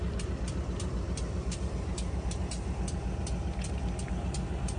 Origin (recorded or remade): recorded